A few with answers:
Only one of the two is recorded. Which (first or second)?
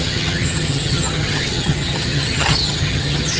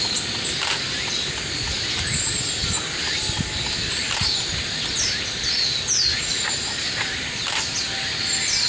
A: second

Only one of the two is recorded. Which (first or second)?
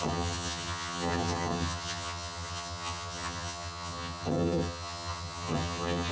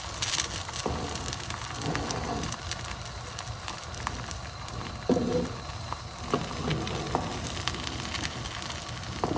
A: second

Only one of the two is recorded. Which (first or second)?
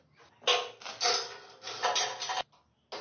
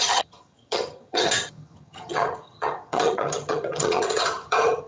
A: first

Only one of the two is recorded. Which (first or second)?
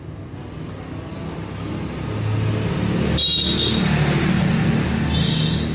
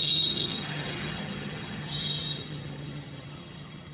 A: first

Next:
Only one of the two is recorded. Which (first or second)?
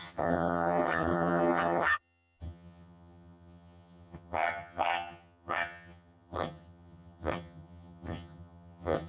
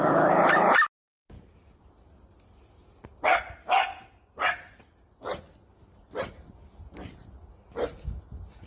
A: second